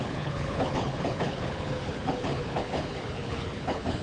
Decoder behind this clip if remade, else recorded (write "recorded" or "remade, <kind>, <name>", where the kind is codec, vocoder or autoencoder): remade, codec, HILCodec